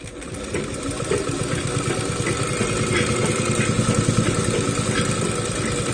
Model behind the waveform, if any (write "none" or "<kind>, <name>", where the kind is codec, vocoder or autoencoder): none